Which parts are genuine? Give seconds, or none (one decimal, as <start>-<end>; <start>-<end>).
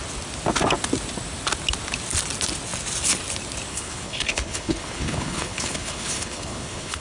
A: 0.0-3.7